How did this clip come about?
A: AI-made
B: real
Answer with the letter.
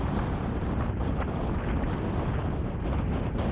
B